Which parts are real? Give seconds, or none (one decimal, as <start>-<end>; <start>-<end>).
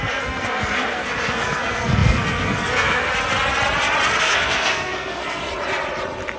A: 3.1-4.2; 5.4-6.4